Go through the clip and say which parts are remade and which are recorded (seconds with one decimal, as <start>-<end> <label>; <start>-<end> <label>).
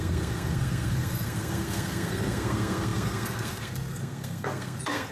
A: 0.0-5.1 remade